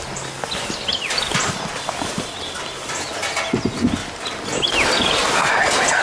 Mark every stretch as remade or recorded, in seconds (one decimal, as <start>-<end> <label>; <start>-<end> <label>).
0.0-6.0 recorded